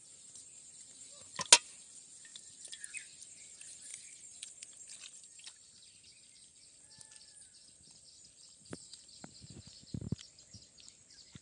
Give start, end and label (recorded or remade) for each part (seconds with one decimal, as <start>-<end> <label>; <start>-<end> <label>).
0.0-3.9 recorded; 3.9-9.2 remade; 9.2-11.4 recorded

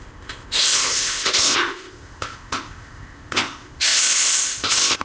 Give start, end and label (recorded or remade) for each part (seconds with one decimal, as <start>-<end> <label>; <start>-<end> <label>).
0.0-5.0 remade